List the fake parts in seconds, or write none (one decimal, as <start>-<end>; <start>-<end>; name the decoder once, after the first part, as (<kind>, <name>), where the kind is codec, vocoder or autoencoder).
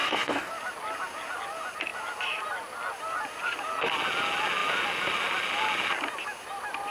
0.0-0.5 (codec, DAC)